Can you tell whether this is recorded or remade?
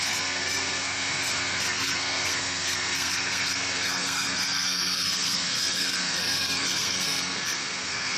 remade